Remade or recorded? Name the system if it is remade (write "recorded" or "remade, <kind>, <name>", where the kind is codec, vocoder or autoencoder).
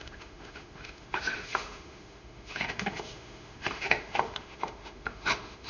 remade, autoencoder, DAC-VAE